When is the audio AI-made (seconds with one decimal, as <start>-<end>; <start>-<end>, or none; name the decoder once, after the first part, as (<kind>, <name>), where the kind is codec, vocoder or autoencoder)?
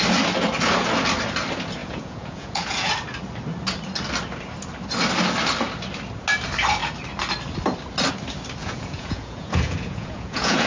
1.8-2.9 (vocoder, Vocos); 8.6-10.7